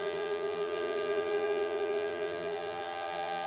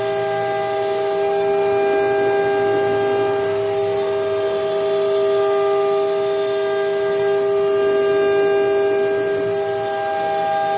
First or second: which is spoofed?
first